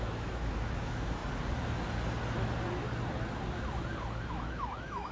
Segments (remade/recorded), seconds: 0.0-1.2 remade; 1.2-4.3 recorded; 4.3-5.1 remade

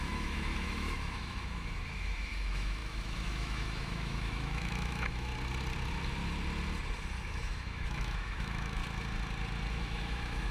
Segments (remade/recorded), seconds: 0.0-5.3 remade; 5.3-7.3 recorded; 7.3-8.8 remade; 8.8-9.7 recorded; 9.7-10.5 remade

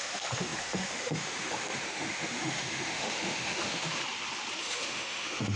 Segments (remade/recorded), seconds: 0.0-4.0 remade; 4.0-4.6 recorded; 4.6-5.6 remade

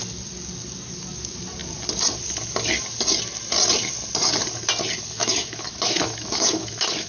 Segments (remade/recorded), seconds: 0.0-5.2 recorded; 5.2-7.1 remade